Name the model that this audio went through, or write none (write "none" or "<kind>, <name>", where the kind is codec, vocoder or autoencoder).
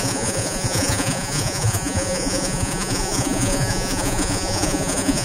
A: vocoder, Vocos